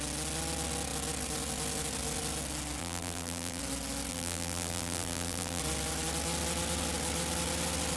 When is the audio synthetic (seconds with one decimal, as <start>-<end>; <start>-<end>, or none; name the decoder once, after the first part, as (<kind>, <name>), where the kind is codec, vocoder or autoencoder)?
2.8-3.6 (vocoder, BigVGAN v2); 4.1-5.6